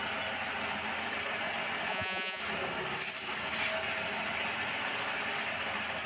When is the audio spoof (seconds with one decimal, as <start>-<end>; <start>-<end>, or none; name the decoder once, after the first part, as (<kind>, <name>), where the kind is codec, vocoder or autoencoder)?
1.9-2.4 (vocoder, Vocos)